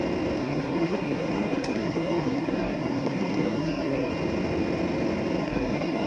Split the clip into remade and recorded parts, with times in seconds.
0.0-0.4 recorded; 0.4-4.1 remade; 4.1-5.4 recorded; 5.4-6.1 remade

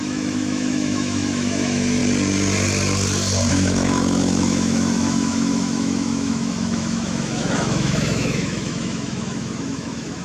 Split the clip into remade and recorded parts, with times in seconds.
0.0-2.0 remade; 2.0-3.5 recorded; 3.5-10.2 remade

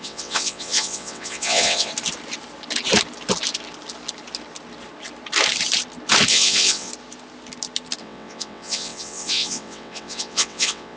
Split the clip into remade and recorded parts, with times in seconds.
0.0-1.9 remade; 1.9-6.3 recorded; 6.3-6.9 remade; 6.9-8.0 recorded; 8.0-11.0 remade

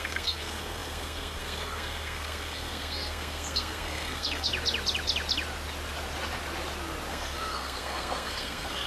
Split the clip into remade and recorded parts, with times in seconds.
0.0-4.5 remade; 4.5-7.1 recorded; 7.1-8.9 remade

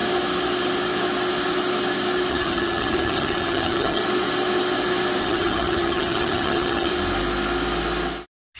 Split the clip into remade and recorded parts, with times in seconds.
0.0-2.3 recorded; 2.3-4.0 remade; 4.0-5.2 recorded; 5.2-6.9 remade; 6.9-8.6 recorded

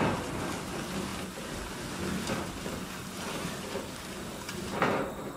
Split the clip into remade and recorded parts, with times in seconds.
0.0-5.4 recorded

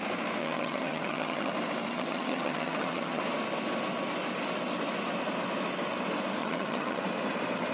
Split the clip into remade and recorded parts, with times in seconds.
0.0-0.4 recorded; 0.4-1.5 remade; 1.5-1.9 recorded; 1.9-3.2 remade; 3.2-6.4 recorded; 6.4-7.0 remade; 7.0-7.7 recorded